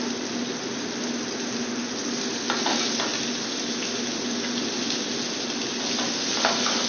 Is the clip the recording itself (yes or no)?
yes